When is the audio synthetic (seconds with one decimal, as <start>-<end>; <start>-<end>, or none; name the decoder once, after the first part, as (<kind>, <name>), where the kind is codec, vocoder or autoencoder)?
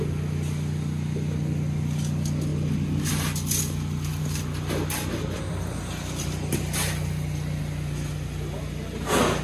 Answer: none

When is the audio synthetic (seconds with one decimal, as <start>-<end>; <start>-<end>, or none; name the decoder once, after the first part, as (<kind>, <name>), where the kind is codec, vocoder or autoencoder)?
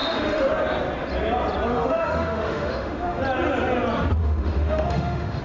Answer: 0.0-0.5 (autoencoder, DAC-VAE); 1.7-3.2; 4.2-5.4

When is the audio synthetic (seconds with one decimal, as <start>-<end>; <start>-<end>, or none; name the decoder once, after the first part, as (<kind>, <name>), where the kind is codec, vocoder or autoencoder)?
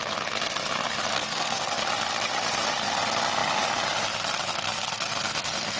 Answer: 1.1-1.6 (codec, SNAC)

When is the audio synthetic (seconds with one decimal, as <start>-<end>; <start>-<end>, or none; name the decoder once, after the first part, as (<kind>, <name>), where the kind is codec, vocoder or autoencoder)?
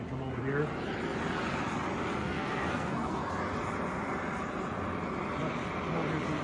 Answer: 2.2-3.3 (codec, SNAC)